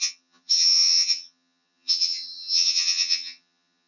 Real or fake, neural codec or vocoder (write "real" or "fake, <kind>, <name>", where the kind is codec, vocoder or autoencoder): fake, vocoder, HiFi-GAN